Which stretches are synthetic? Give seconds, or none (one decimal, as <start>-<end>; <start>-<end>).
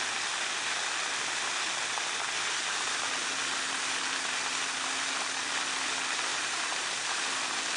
6.3-6.9